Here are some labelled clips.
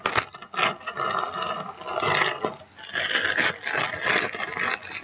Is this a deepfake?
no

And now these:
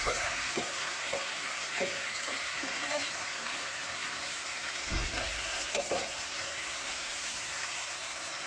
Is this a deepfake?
yes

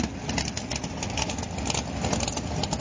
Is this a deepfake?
no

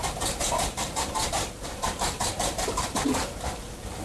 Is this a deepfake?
yes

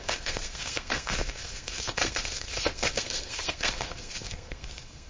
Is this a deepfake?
yes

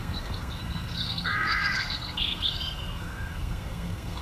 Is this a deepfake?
yes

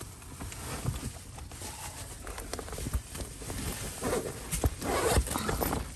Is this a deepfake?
no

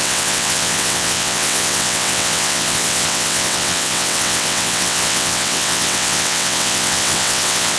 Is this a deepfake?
yes